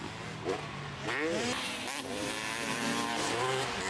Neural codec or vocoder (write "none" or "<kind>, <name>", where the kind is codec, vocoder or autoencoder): none